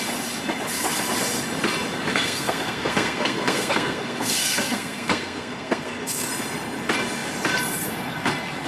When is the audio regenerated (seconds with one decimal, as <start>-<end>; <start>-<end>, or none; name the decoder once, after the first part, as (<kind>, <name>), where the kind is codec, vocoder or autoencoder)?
2.1-6.3 (codec, SNAC)